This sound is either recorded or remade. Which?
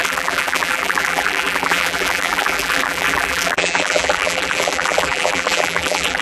remade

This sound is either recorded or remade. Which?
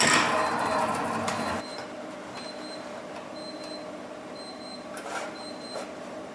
remade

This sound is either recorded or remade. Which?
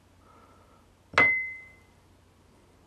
recorded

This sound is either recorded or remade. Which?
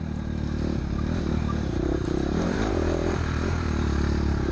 remade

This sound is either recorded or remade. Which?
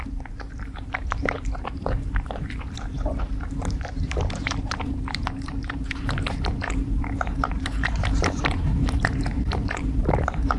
remade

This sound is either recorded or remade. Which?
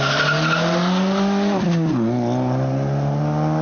recorded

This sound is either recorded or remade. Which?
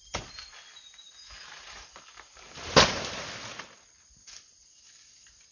recorded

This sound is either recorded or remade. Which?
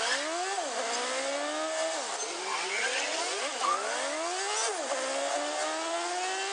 recorded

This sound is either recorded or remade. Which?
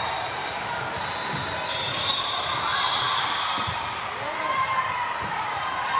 remade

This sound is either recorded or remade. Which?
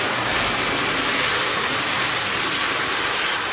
remade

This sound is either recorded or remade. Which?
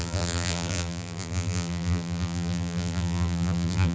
remade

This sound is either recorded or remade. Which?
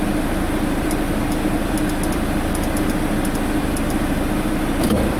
remade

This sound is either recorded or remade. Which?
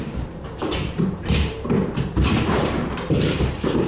remade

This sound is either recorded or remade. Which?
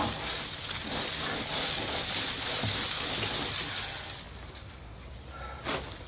recorded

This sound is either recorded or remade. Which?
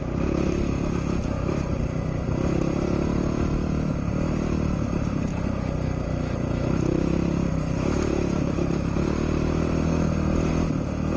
remade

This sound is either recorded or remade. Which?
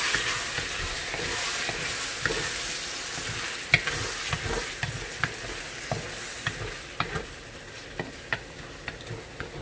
recorded